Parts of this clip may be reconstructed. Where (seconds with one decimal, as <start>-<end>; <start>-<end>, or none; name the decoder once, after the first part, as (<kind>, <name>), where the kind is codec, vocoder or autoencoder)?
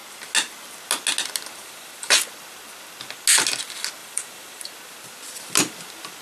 1.6-2.3 (vocoder, BigVGAN v2); 4.0-4.7